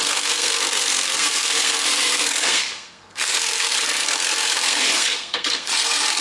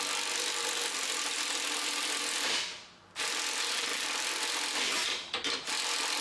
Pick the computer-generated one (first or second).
first